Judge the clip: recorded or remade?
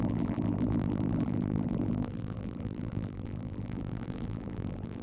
remade